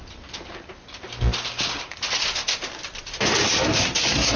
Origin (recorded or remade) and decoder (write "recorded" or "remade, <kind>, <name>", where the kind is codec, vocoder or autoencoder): recorded